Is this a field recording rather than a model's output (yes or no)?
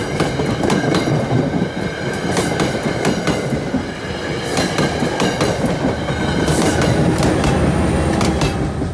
yes